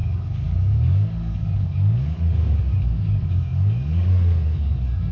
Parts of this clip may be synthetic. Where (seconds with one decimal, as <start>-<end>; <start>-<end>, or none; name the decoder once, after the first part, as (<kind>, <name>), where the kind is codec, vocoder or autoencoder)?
0.0-5.1 (codec, DAC)